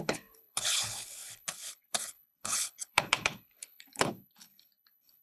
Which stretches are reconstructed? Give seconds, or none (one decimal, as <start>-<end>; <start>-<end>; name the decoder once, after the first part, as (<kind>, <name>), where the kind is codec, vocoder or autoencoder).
0.0-5.2 (codec, HILCodec)